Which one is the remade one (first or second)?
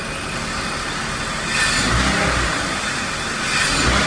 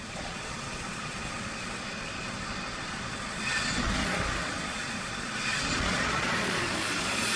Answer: second